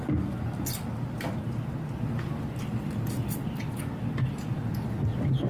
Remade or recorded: recorded